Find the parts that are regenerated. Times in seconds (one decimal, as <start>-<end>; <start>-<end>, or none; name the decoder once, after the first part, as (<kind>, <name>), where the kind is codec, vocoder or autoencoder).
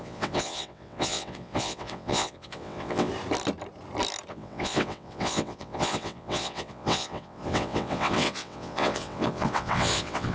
0.0-3.1 (vocoder, WaveNeXt); 4.3-10.3